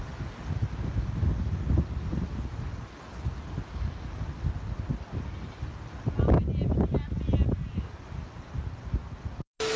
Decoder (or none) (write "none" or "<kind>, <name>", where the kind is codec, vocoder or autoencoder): none